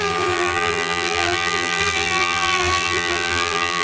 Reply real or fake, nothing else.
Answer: fake